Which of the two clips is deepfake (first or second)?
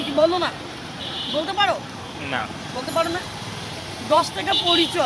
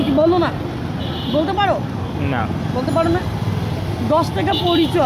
first